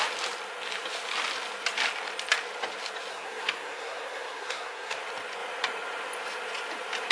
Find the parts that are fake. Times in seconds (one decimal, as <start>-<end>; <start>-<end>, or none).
3.1-5.0